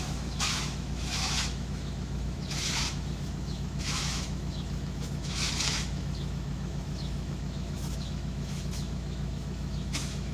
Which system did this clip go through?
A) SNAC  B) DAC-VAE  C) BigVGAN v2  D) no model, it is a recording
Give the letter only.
B